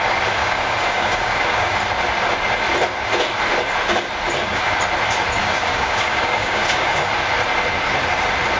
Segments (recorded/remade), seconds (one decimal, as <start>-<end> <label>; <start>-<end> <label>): 0.0-0.4 recorded; 0.4-1.8 remade; 1.8-5.4 recorded; 5.4-7.1 remade; 7.1-8.6 recorded